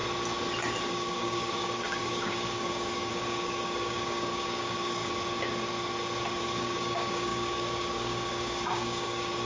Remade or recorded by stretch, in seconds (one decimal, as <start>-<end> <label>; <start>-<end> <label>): 0.0-0.9 recorded; 0.9-5.0 remade; 5.0-6.4 recorded; 6.4-9.4 remade